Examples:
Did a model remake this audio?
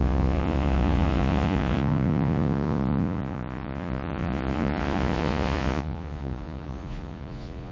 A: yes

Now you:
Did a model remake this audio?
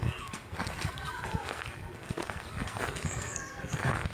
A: yes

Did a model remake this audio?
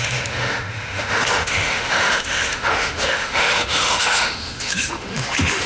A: yes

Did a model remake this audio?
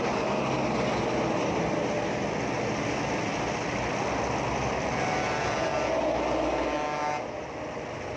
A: no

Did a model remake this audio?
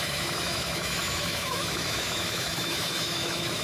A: yes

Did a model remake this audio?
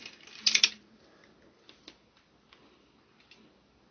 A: no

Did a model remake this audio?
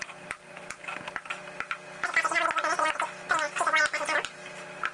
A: no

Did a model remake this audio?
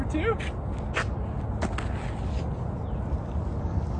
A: no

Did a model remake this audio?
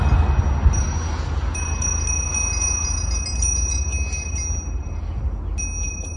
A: no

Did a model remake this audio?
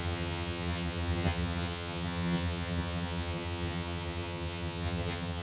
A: yes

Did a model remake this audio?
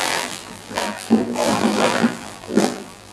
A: yes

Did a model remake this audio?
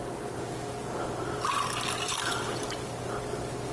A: no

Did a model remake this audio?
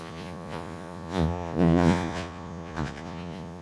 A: yes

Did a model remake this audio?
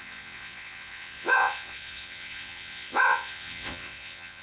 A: yes